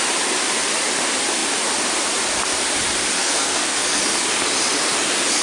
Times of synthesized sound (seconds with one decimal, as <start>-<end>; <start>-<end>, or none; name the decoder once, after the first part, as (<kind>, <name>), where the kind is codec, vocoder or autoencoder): 3.2-4.0 (codec, SNAC)